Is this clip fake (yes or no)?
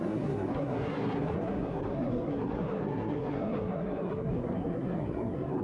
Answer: yes